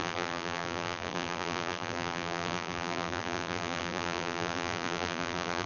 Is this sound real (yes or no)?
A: no